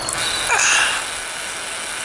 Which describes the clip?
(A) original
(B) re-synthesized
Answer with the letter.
A